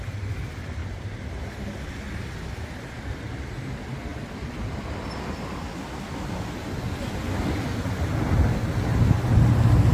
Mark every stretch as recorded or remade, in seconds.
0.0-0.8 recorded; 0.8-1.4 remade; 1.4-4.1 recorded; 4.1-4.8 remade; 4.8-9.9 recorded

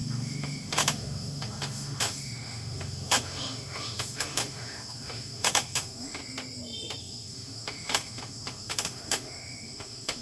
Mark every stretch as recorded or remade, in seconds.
0.0-6.2 remade; 6.2-7.0 recorded; 7.0-10.2 remade